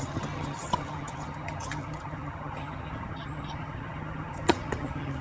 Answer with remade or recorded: remade